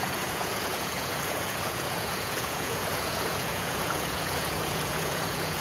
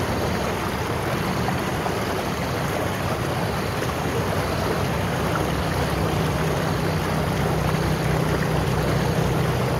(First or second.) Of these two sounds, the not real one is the first